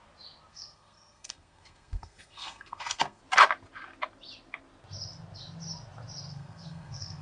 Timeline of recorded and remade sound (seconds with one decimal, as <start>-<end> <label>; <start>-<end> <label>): 0.0-0.5 recorded; 0.5-3.2 remade; 3.2-6.3 recorded; 6.3-7.2 remade